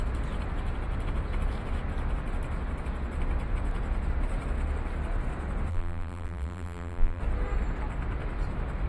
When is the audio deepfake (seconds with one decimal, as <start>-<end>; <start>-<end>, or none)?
5.7-7.2